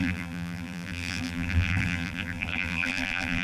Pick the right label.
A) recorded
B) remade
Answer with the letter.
B